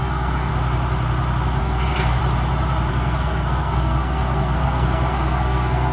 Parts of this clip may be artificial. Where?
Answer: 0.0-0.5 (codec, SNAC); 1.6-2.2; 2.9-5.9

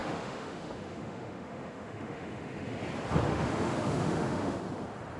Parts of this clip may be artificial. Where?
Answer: 0.0-2.8 (autoencoder, DAC-VAE); 3.3-4.6

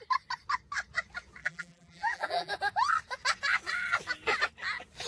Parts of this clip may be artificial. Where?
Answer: 1.4-2.5 (vocoder, BigVGAN v2)